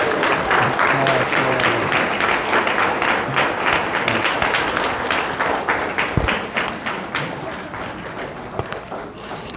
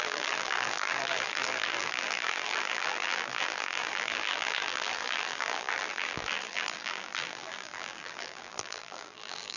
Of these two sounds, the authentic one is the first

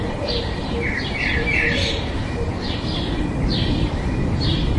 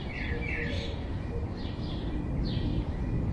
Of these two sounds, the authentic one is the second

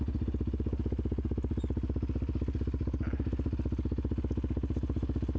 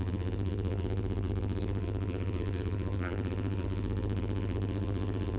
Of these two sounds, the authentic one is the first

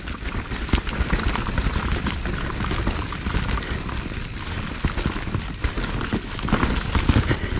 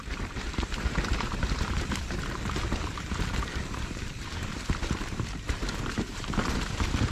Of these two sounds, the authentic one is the first